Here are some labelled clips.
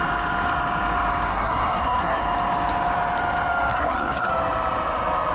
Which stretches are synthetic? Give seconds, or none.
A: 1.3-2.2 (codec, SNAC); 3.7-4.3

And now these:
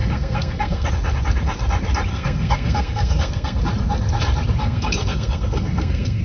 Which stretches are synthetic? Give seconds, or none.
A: 0.0-0.9 (codec, SNAC); 2.1-3.6; 4.6-6.2

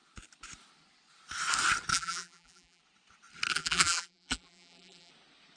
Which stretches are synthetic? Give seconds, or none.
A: 1.9-2.8 (vocoder, BigVGAN v2); 3.5-5.1

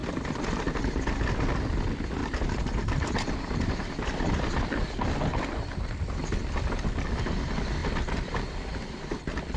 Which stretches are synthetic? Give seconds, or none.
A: 0.0-1.1 (vocoder, BigVGAN v2); 2.2-3.7

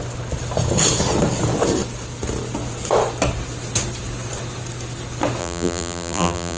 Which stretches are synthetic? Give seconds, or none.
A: 5.4-6.6 (vocoder, BigVGAN v2)

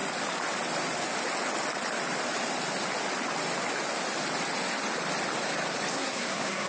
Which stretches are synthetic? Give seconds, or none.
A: 5.9-6.7 (codec, SNAC)